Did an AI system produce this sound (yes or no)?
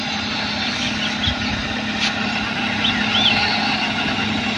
no